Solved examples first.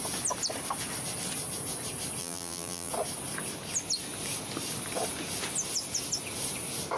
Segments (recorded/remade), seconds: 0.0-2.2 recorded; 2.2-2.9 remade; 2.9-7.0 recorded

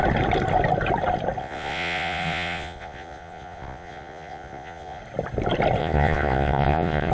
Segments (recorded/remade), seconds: 0.0-1.4 recorded; 1.4-5.0 remade; 5.0-5.8 recorded; 5.8-7.1 remade